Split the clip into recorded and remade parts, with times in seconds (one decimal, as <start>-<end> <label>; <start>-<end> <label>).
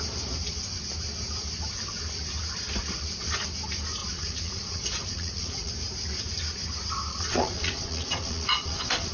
0.0-4.0 recorded; 4.0-5.7 remade; 5.7-7.1 recorded; 7.1-9.1 remade